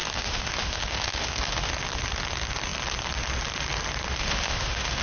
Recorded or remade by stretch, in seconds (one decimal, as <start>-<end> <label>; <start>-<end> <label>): 0.0-1.7 remade; 1.7-4.2 recorded; 4.2-5.0 remade